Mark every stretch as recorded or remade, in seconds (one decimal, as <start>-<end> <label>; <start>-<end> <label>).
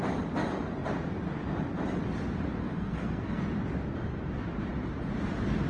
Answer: 0.0-2.6 recorded; 2.6-3.4 remade; 3.4-5.7 recorded